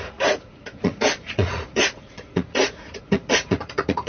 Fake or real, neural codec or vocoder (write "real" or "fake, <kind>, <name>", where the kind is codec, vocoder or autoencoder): fake, vocoder, Vocos